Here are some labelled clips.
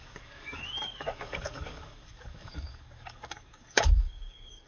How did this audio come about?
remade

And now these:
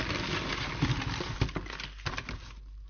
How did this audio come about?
recorded